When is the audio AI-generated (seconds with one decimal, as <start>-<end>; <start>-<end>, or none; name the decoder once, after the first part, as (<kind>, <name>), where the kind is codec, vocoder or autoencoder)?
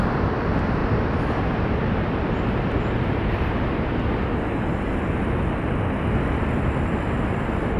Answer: none